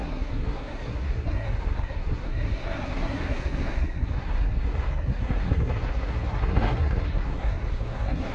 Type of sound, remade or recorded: remade